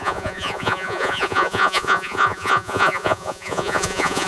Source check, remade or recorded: remade